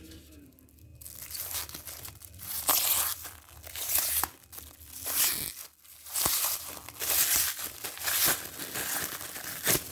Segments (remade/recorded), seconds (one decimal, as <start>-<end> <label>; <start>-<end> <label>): 0.0-9.9 recorded